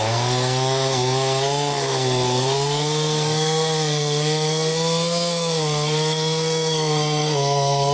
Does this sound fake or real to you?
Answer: fake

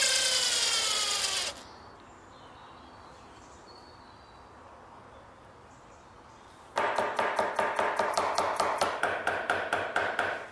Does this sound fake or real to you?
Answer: real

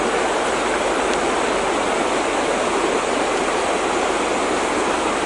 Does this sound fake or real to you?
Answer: real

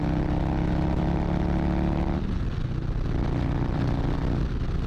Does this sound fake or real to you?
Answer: real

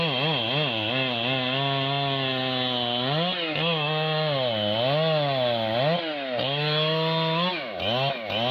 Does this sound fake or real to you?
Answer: real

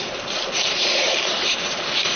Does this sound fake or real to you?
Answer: fake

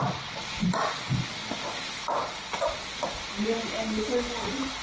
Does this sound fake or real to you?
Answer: real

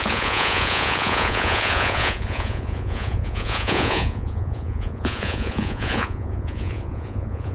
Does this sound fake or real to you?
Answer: fake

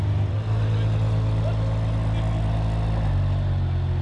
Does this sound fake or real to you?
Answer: real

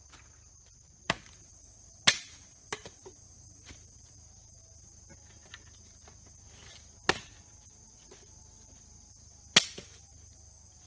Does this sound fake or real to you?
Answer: real